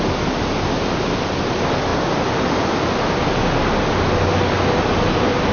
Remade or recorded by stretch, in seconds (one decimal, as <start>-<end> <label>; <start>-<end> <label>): 0.0-5.5 recorded